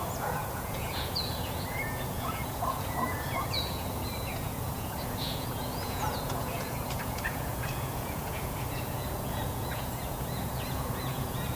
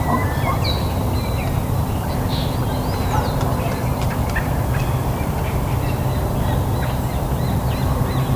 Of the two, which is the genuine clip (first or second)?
second